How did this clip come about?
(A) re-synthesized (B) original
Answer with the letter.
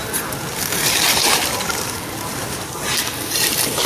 B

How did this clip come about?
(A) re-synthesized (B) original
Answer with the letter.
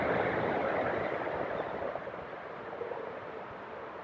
A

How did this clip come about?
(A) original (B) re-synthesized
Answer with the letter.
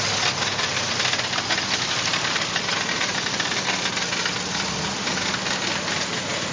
A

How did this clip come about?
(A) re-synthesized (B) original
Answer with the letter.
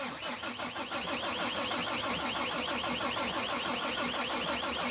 B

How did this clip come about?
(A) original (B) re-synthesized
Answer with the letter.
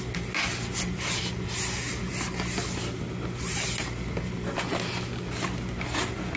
A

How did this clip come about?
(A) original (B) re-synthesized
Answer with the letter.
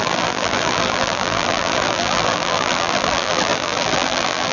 B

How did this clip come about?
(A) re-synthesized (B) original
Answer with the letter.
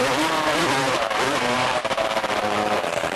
A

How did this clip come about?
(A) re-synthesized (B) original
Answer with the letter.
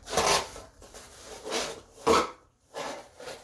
A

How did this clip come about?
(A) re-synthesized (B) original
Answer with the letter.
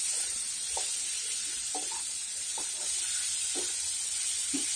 B